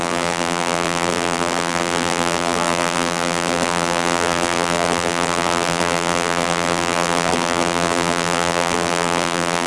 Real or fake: fake